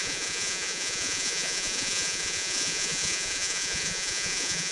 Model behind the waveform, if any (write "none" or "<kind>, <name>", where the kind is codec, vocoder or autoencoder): vocoder, Vocos